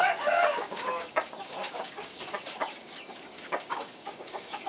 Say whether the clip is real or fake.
fake